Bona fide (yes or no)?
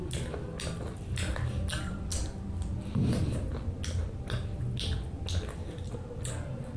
yes